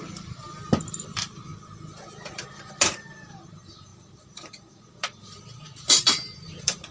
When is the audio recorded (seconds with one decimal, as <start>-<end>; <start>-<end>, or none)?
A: 1.5-2.3